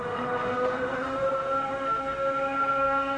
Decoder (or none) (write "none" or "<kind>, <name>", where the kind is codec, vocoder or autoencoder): autoencoder, DAC-VAE